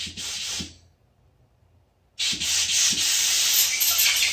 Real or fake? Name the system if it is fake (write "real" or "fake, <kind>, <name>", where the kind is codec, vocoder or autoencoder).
real